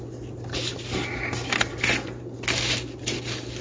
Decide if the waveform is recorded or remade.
recorded